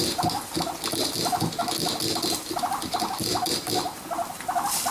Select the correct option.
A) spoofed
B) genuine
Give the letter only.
B